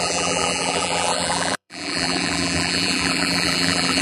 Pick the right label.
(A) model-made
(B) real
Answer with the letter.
A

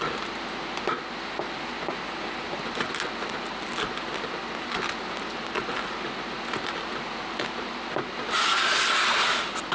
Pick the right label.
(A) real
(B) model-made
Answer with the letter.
A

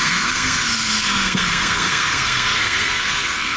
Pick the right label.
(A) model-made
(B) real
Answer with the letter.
A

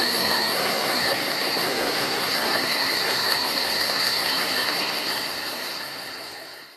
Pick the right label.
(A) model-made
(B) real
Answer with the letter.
A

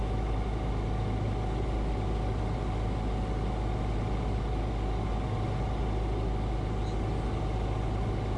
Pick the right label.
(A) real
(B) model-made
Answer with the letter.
A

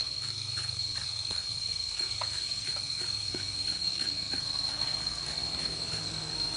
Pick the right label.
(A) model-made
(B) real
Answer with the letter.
A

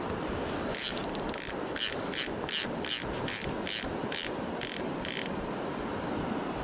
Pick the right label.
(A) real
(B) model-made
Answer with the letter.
A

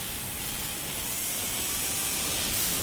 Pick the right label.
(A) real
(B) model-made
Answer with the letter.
A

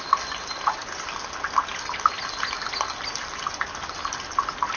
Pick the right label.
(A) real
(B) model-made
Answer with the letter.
A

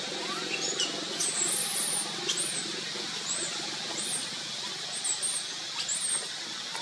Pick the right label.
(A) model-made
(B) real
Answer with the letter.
B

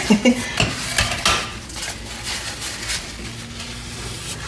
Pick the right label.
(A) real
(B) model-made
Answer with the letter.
A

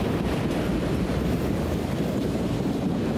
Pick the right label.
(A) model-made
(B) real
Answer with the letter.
A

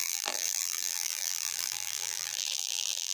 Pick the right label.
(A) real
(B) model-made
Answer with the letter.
B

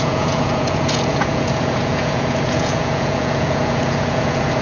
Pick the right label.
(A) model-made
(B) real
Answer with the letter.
A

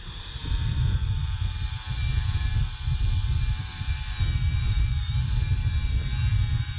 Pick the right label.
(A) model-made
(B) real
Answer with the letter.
A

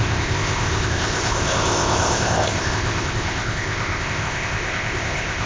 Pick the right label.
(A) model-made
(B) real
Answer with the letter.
A